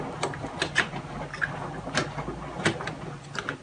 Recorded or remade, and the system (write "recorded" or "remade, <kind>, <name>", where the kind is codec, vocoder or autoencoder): recorded